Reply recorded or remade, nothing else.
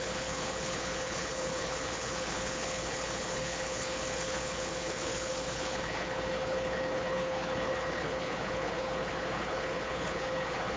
remade